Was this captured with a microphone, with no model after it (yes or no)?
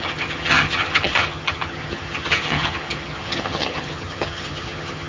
no